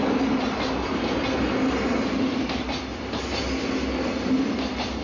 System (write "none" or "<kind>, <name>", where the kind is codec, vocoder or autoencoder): none